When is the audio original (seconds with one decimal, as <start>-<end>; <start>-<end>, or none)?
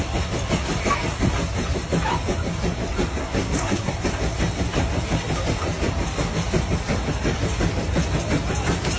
0.0-3.2; 3.9-9.0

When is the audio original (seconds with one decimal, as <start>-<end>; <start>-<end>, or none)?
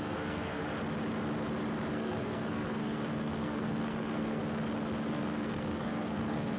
0.6-1.9; 4.4-5.1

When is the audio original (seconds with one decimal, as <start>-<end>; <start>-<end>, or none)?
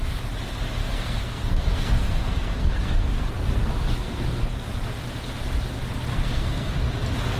0.0-0.8; 4.7-6.1; 6.7-7.4